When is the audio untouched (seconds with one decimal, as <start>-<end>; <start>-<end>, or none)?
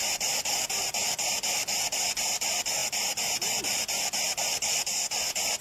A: 0.0-5.6